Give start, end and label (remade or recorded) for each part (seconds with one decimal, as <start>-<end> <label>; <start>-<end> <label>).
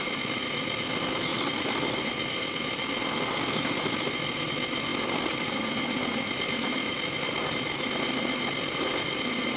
0.0-9.6 recorded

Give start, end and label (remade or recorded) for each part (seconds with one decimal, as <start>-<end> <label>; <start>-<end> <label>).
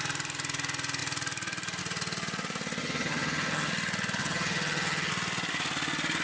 0.0-2.8 recorded; 2.8-3.7 remade; 3.7-4.2 recorded; 4.2-5.1 remade; 5.1-6.2 recorded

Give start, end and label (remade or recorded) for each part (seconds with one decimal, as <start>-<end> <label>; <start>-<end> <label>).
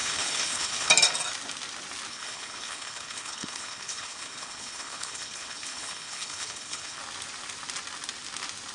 0.0-0.9 remade; 0.9-2.1 recorded; 2.1-7.0 remade; 7.0-8.7 recorded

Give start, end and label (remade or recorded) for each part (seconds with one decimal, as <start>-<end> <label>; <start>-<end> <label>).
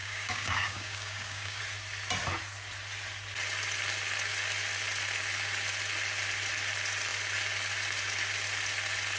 0.0-1.6 remade; 1.6-9.2 recorded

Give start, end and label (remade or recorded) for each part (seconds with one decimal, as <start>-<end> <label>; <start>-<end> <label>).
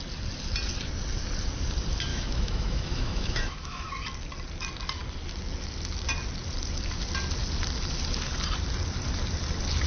0.0-2.1 recorded; 2.1-3.9 remade; 3.9-9.9 recorded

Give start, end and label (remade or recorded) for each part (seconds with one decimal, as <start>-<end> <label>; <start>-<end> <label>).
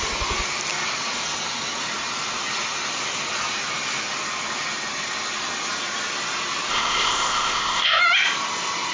0.0-6.7 recorded; 6.7-8.0 remade; 8.0-8.9 recorded